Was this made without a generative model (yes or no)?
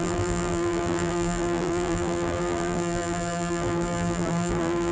no